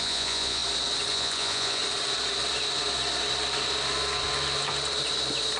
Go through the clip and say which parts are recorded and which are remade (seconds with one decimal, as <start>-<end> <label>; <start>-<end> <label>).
0.0-0.6 remade; 0.6-1.1 recorded; 1.1-1.8 remade; 1.8-5.6 recorded